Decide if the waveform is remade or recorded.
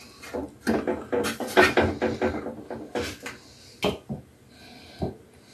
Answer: recorded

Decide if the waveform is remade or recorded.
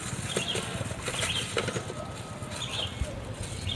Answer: recorded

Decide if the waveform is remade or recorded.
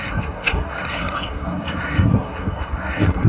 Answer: remade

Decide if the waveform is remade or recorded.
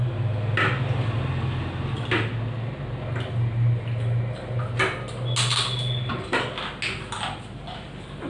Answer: recorded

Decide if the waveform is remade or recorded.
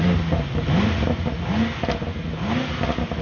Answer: recorded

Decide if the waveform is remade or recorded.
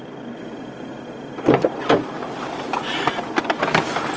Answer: recorded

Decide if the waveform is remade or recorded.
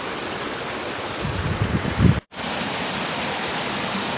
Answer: remade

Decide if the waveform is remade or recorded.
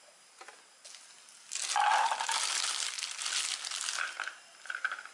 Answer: recorded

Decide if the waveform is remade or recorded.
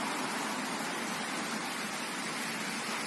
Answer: recorded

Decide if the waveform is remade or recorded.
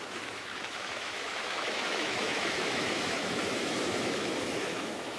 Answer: remade